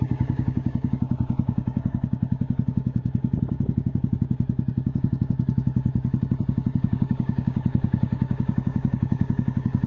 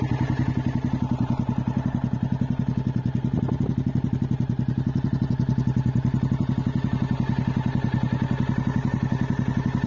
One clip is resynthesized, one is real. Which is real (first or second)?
second